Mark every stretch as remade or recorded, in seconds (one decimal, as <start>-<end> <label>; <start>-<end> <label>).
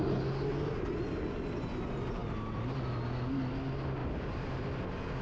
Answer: 0.0-4.0 recorded; 4.0-4.8 remade; 4.8-5.2 recorded